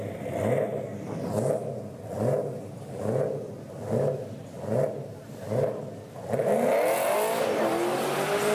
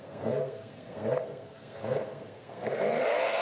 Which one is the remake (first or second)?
second